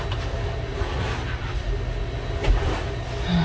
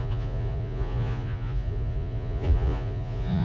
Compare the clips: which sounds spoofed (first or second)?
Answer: second